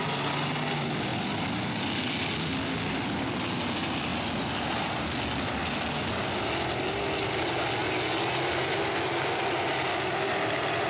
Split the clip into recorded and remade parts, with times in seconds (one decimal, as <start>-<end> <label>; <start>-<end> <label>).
0.0-10.9 recorded